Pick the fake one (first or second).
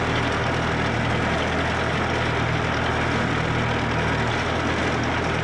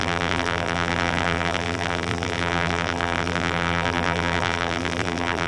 second